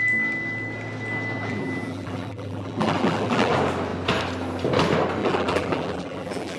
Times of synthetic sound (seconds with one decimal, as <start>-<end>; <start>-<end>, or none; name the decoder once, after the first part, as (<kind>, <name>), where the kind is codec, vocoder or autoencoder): 1.4-3.5 (vocoder, BigVGAN v2); 5.2-6.6